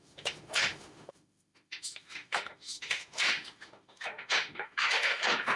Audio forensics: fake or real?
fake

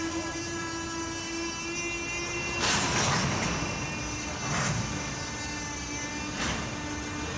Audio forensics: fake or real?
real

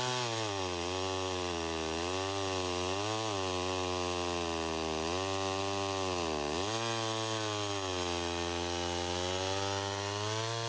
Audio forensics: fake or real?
real